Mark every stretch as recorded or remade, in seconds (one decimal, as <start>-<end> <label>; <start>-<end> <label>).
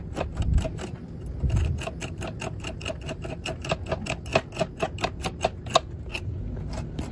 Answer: 0.0-7.1 recorded